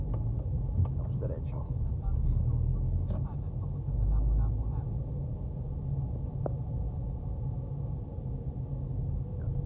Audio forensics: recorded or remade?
recorded